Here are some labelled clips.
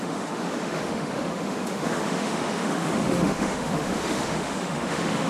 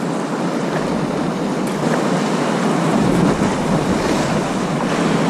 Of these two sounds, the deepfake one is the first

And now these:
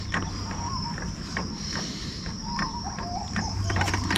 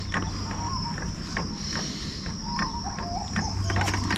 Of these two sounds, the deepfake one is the first